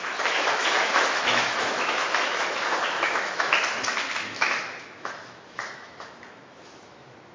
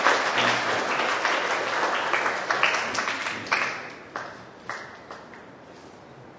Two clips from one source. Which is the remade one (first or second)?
first